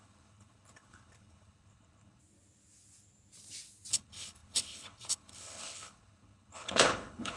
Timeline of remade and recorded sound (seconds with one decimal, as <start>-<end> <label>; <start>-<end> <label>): 0.0-2.2 remade; 2.2-3.9 recorded; 3.9-7.4 remade